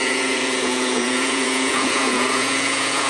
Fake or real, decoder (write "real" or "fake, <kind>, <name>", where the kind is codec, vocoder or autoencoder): fake, vocoder, Vocos